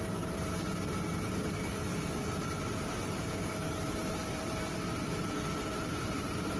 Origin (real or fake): fake